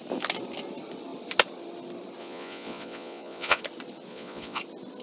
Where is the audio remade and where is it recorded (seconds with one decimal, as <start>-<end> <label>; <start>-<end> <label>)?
0.0-2.2 recorded; 2.2-3.6 remade; 3.6-4.1 recorded; 4.1-4.6 remade; 4.6-5.0 recorded